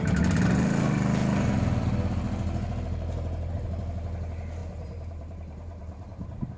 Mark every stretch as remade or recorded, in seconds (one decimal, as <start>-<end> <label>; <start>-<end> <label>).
0.0-4.6 recorded; 4.6-6.6 remade